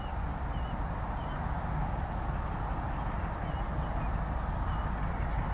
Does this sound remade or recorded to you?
recorded